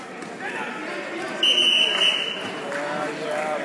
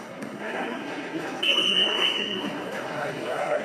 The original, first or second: first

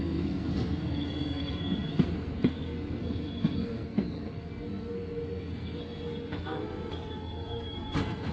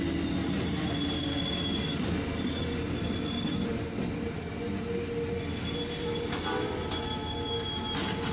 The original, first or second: second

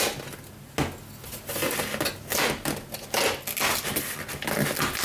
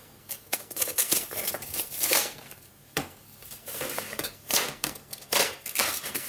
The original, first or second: first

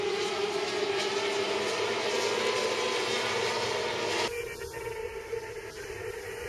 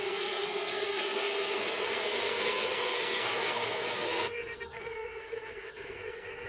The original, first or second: first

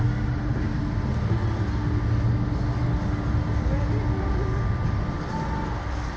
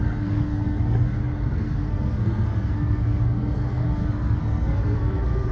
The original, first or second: first